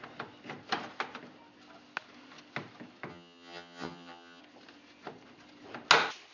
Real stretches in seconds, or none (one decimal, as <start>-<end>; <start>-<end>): 0.0-3.1; 4.4-6.3